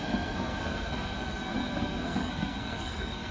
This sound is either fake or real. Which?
fake